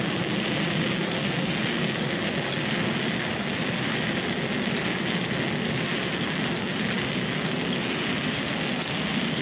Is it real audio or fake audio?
real